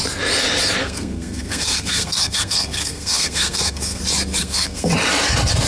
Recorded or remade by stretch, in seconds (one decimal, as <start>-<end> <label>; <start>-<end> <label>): 0.0-0.8 recorded; 0.8-4.0 remade; 4.0-4.4 recorded; 4.4-4.9 remade; 4.9-5.7 recorded